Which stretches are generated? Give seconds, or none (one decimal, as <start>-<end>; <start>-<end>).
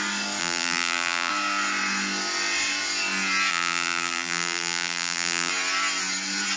0.4-1.3; 3.5-5.5